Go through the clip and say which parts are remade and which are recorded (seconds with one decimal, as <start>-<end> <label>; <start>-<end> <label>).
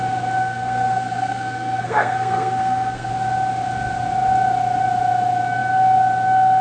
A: 0.0-0.4 recorded; 0.4-3.1 remade; 3.1-6.6 recorded